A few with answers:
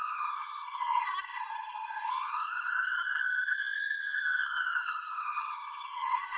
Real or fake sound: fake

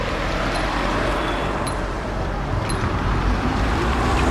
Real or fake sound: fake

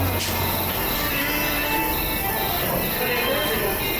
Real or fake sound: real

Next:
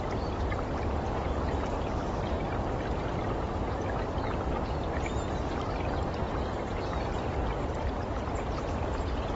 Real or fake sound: real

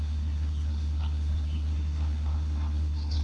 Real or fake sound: fake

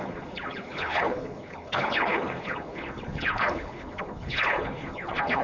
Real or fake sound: fake